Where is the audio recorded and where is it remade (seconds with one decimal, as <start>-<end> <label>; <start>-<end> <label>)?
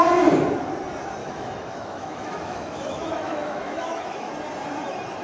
0.0-1.2 recorded; 1.2-4.3 remade; 4.3-5.2 recorded